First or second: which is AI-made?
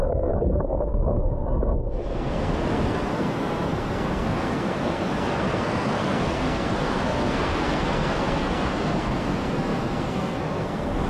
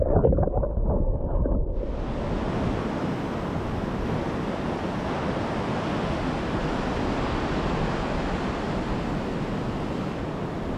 first